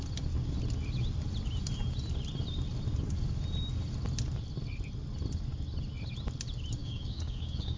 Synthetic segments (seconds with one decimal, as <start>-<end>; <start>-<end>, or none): 6.8-7.8